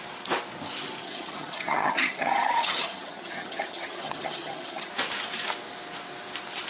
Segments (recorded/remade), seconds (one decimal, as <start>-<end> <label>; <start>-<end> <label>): 0.0-1.0 recorded; 1.0-4.9 remade; 4.9-6.7 recorded